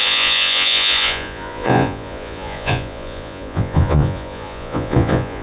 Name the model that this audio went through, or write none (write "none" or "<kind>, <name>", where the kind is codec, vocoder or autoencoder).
vocoder, Vocos